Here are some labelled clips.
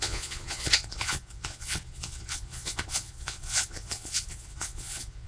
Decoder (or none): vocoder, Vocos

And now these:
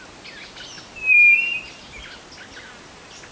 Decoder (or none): none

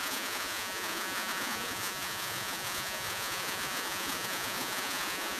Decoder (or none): vocoder, Vocos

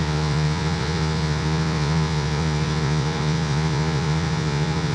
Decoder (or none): vocoder, Vocos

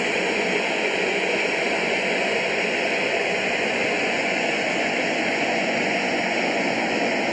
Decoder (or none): vocoder, Vocos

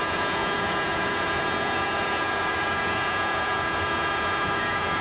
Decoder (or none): vocoder, Vocos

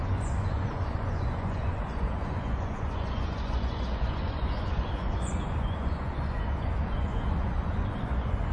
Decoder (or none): vocoder, Vocos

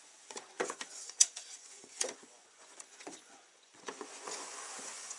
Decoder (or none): vocoder, Vocos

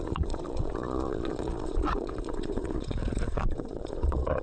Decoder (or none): vocoder, Vocos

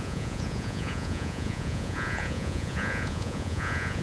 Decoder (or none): vocoder, Vocos